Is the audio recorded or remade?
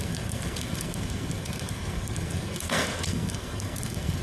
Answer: remade